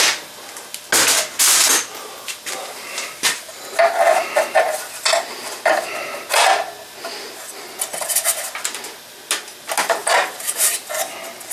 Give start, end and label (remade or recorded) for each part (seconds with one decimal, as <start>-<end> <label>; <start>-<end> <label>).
0.0-10.0 recorded; 10.0-10.8 remade; 10.8-11.5 recorded

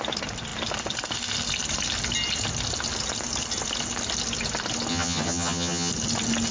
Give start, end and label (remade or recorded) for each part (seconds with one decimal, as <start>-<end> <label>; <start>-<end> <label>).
0.0-4.9 recorded; 4.9-5.9 remade; 5.9-6.5 recorded